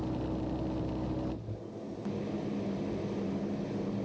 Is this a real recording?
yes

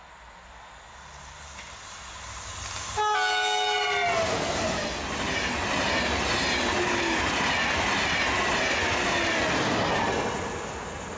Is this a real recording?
yes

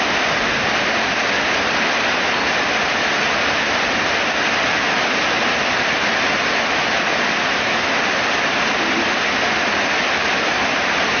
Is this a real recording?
yes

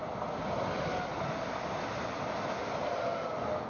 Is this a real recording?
yes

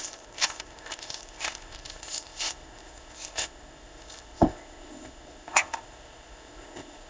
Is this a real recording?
no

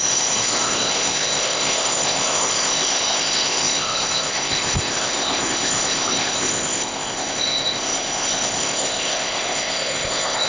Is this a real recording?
no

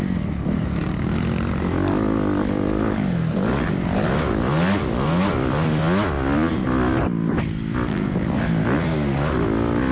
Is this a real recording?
yes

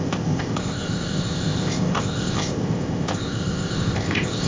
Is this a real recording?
no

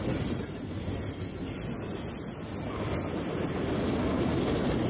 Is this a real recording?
yes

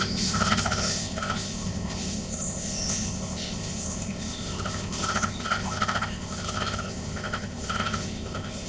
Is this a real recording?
no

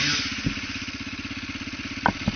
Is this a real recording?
yes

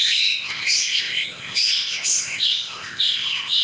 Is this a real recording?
no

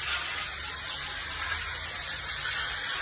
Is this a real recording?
yes